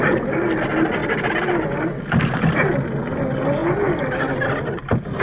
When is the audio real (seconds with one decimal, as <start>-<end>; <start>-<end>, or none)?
0.0-1.0; 1.7-5.2